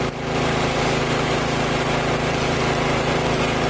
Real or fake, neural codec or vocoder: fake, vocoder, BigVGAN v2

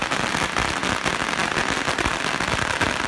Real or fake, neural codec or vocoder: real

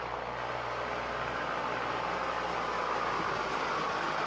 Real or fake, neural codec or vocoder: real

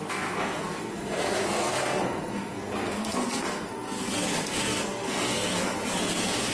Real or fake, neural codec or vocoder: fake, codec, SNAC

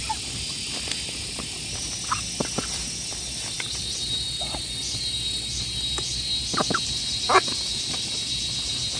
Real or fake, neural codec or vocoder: real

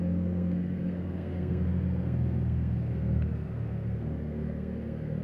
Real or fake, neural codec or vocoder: fake, codec, SNAC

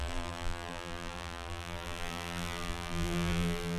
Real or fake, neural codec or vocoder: fake, vocoder, BigVGAN v2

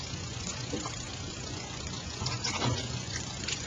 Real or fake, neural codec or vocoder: fake, vocoder, Vocos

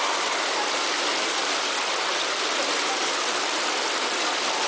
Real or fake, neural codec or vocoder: real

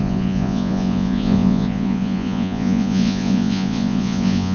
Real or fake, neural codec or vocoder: fake, vocoder, Vocos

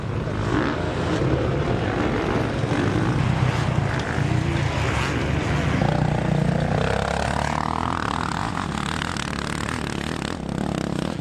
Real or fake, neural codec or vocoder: real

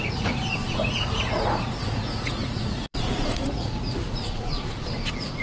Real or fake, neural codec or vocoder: fake, vocoder, Vocos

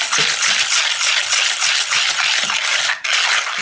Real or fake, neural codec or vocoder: real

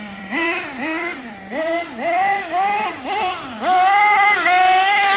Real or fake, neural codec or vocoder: fake, vocoder, BigVGAN v2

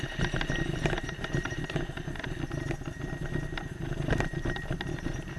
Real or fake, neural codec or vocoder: real